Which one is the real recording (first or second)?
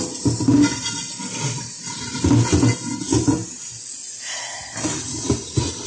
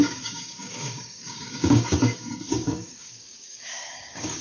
first